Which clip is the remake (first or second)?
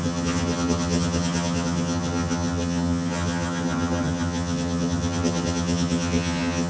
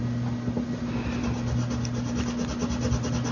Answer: first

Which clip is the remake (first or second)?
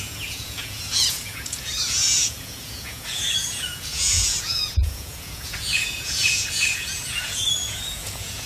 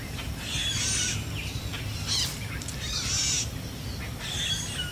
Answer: first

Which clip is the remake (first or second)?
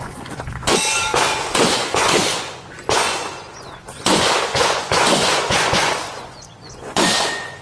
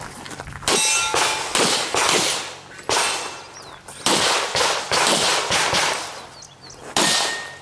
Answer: first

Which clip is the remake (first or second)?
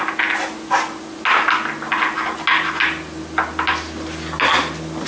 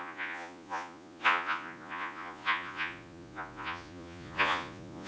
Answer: second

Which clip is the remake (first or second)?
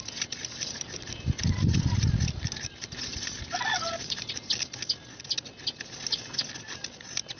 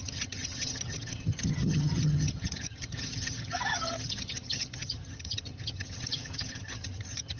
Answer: second